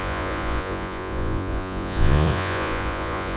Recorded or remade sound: remade